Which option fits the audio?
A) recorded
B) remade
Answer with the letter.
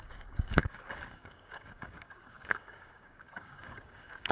B